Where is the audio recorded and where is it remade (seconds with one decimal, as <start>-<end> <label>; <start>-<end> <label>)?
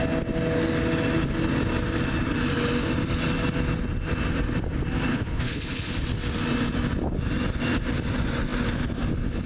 0.0-5.1 recorded; 5.1-5.9 remade; 5.9-9.5 recorded